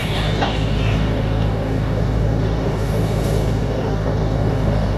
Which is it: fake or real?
fake